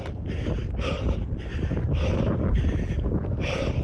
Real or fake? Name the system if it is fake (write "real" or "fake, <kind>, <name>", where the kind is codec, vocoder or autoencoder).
real